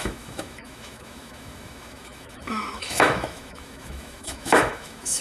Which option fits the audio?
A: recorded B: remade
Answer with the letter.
B